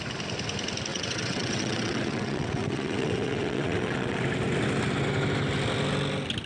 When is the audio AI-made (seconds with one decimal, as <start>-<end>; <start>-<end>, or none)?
0.9-4.2

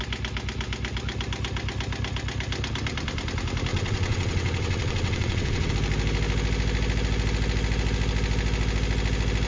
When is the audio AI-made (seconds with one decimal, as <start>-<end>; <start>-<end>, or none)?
3.7-5.7